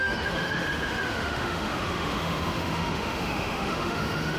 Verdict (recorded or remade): remade